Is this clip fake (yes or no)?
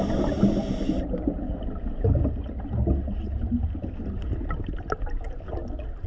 no